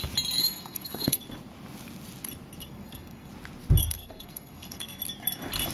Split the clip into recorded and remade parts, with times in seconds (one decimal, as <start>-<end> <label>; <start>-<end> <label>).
0.0-0.4 recorded; 0.4-1.2 remade; 1.2-2.6 recorded; 2.6-3.3 remade; 3.3-3.8 recorded; 3.8-5.0 remade; 5.0-5.7 recorded